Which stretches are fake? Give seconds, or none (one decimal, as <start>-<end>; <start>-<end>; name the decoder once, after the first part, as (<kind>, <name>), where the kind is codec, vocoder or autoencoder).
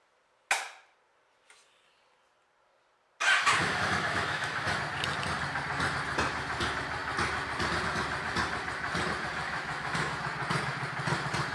3.6-4.8 (autoencoder, DAC-VAE); 9.4-10.2